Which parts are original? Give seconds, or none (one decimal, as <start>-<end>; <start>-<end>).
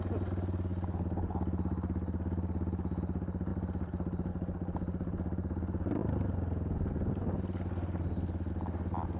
0.0-9.2